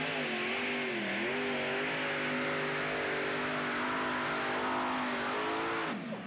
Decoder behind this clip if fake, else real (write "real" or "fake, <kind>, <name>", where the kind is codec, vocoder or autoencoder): real